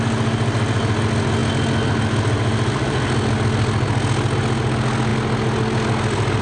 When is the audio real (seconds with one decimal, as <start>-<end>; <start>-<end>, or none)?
0.0-6.4